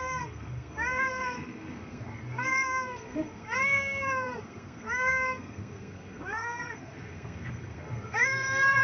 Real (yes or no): no